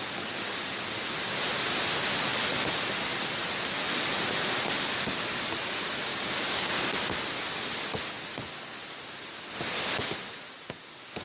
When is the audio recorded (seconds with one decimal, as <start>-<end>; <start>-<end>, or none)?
0.0-6.1; 6.7-11.2